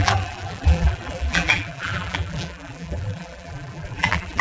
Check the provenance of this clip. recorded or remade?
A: remade